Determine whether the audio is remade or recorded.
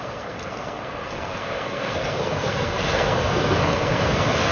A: remade